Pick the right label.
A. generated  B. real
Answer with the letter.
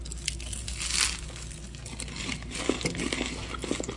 B